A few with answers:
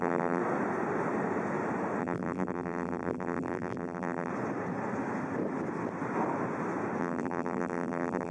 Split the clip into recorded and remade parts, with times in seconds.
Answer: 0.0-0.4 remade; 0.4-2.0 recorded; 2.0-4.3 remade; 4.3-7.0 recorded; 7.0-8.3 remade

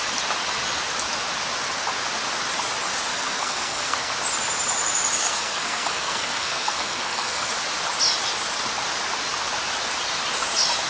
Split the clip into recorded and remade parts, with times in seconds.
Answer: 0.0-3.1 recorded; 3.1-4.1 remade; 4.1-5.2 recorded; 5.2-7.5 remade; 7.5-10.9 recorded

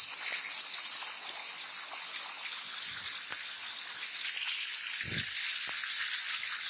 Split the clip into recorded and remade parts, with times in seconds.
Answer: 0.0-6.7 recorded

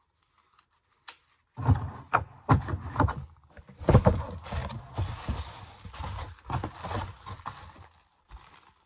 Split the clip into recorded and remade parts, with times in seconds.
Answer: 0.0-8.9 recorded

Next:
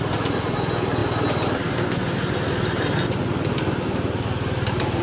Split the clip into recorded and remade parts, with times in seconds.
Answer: 0.0-5.0 recorded

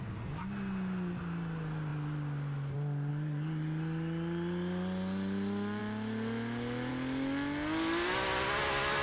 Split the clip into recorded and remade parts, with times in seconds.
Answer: 0.0-9.0 recorded

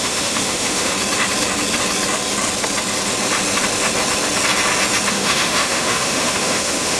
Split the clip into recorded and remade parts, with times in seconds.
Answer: 0.0-0.9 remade; 0.9-5.1 recorded; 5.1-7.0 remade

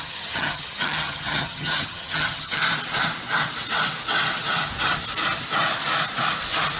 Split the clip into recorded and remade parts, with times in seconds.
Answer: 0.0-2.6 remade; 2.6-6.8 recorded